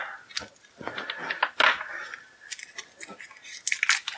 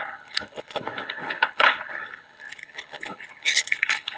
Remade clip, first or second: second